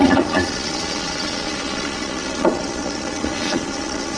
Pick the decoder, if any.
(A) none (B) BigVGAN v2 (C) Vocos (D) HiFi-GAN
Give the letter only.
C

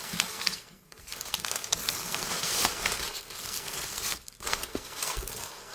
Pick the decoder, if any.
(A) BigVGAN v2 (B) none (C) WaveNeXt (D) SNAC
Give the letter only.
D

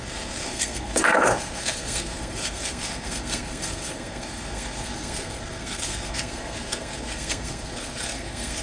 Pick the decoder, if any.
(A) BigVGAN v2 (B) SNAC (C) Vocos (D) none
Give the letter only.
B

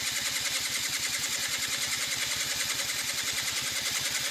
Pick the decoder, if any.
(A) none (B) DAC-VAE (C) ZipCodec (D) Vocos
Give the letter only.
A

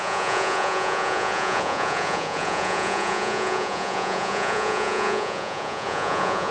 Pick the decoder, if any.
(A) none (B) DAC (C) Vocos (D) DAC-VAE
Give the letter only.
C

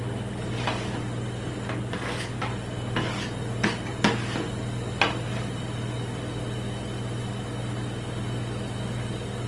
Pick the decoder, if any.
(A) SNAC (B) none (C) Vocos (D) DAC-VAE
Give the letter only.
B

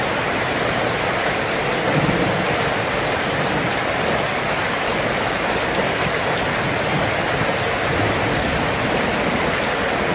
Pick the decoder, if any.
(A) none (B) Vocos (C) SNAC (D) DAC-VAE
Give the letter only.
A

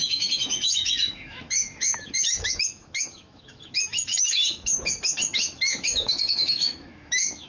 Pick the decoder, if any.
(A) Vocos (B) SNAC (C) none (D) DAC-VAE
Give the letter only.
D